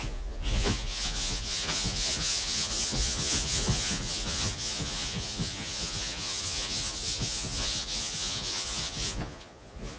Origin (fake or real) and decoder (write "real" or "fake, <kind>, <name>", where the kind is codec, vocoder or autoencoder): fake, vocoder, Vocos